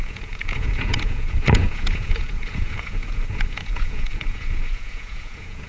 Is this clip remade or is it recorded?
remade